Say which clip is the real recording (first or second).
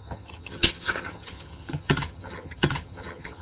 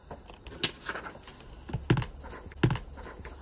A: second